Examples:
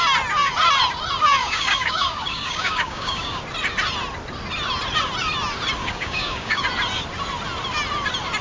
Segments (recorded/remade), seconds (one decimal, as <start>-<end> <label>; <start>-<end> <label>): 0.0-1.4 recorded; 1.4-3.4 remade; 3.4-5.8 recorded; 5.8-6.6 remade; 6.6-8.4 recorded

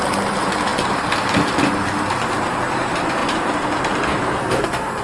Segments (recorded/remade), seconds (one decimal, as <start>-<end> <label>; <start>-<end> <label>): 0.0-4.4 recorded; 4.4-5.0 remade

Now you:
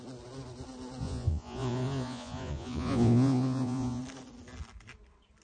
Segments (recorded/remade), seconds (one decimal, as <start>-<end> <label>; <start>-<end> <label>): 0.0-1.0 recorded; 1.0-4.0 remade; 4.0-5.4 recorded

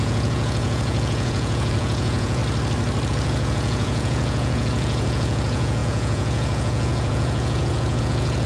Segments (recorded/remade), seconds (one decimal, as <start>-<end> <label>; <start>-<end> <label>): 0.0-2.4 remade; 2.4-3.1 recorded; 3.1-8.5 remade

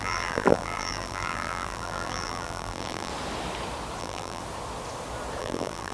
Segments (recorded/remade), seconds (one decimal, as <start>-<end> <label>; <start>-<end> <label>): 0.0-3.1 remade; 3.1-4.0 recorded; 4.0-4.4 remade; 4.4-5.4 recorded; 5.4-5.9 remade